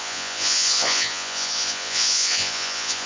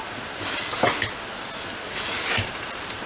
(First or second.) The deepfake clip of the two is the first